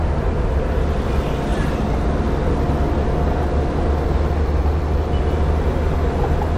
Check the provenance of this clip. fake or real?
real